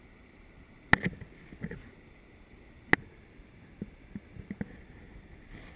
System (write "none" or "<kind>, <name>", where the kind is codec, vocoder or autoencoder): none